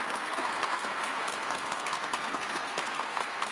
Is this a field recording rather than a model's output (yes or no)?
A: no